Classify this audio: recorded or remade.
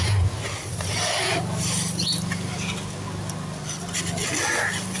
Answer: recorded